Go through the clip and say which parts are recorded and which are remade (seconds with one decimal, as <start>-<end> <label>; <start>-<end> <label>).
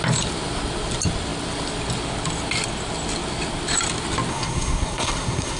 0.0-4.3 recorded; 4.3-5.6 remade